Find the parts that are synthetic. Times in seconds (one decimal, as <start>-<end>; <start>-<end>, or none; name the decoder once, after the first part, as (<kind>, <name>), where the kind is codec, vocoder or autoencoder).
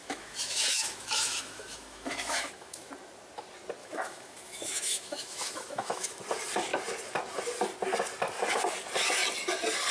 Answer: 0.0-2.9 (autoencoder, DAC-VAE); 3.8-6.2